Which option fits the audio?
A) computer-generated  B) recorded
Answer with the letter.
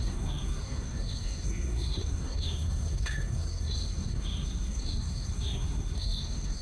A